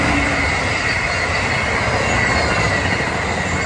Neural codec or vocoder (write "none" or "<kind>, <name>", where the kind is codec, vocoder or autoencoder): none